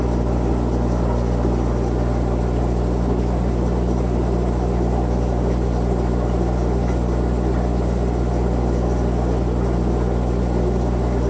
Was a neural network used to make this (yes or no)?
no